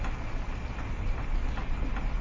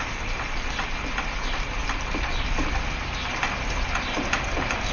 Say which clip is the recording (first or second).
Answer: first